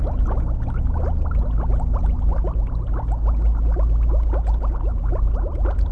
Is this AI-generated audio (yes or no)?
no